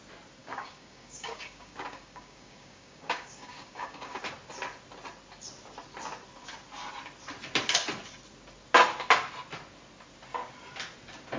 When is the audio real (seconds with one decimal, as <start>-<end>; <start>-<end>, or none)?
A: 0.0-0.4; 4.2-11.4